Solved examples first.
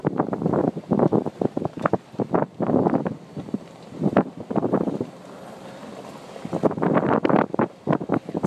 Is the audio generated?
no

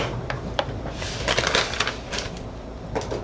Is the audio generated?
yes